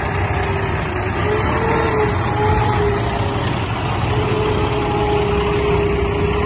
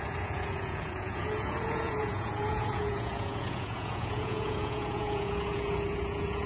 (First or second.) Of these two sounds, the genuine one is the first